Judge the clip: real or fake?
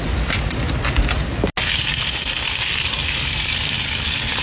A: real